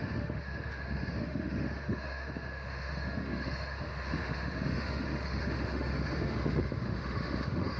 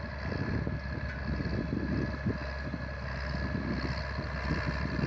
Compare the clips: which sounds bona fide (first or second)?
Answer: second